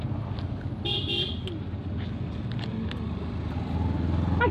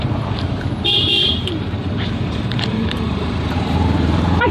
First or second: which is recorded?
first